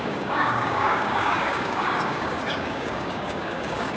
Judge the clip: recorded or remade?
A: remade